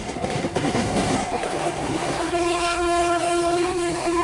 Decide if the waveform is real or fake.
fake